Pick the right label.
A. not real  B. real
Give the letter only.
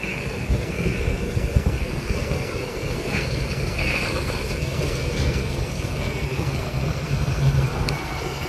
A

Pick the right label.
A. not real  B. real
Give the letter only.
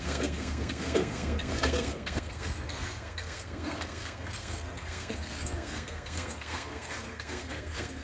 A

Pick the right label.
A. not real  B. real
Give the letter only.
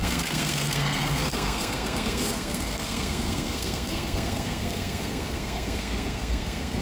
A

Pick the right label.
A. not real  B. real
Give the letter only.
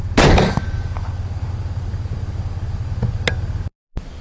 B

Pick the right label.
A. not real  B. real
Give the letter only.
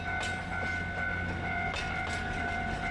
B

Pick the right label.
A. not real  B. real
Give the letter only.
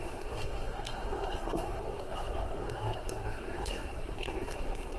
A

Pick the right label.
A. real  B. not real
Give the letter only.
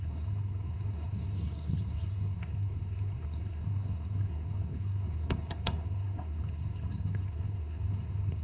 B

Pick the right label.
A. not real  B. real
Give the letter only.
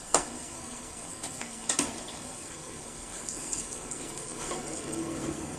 A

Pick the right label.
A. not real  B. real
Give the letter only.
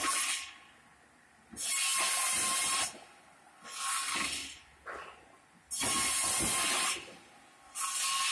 B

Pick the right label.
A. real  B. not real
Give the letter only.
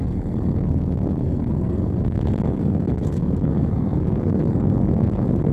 B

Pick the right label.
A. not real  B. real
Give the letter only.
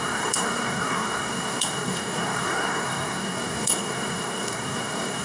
A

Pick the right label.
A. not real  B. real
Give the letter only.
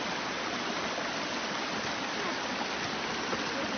B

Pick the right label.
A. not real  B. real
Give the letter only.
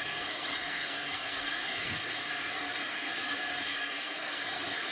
A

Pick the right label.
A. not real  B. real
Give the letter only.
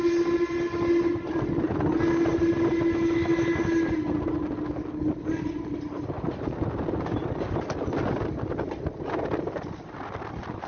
B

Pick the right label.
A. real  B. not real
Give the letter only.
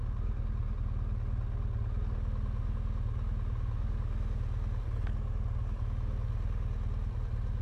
A